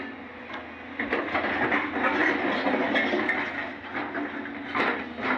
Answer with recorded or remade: recorded